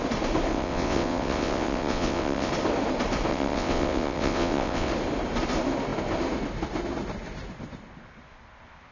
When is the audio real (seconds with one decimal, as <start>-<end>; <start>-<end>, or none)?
0.0-0.5; 2.5-3.3; 4.9-8.9